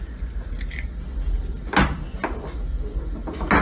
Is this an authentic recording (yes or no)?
yes